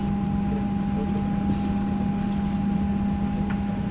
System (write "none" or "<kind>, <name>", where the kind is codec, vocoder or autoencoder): none